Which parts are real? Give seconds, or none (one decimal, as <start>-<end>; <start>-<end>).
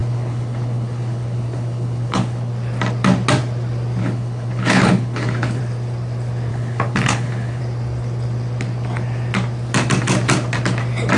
2.5-4.0; 5.6-6.5; 7.6-11.2